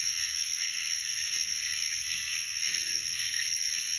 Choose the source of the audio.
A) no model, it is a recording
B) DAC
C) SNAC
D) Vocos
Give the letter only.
C